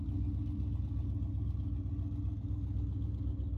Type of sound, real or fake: real